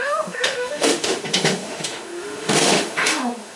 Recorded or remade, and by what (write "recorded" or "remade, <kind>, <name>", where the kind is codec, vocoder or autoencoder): remade, autoencoder, DAC-VAE